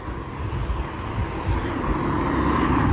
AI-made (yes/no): no